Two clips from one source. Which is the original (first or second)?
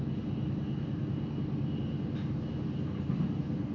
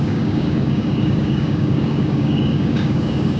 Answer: first